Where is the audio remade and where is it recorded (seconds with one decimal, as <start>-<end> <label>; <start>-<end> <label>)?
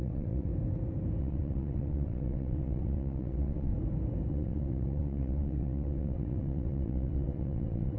0.0-0.5 remade; 0.5-1.2 recorded; 1.2-3.7 remade; 3.7-4.3 recorded; 4.3-8.0 remade